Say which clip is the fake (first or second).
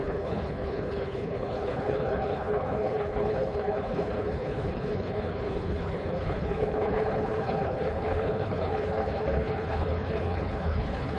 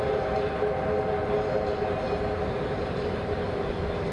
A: first